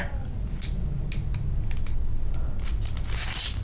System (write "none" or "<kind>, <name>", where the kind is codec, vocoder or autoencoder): none